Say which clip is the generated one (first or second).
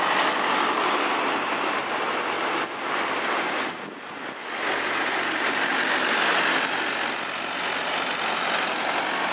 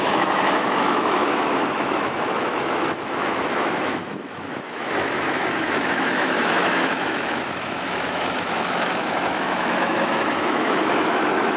second